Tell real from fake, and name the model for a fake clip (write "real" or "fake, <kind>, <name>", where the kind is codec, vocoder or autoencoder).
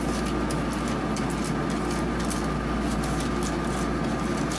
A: real